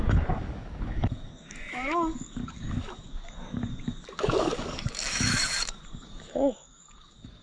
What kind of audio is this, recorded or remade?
remade